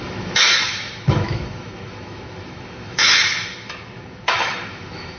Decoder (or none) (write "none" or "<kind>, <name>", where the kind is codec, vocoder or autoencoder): autoencoder, DAC-VAE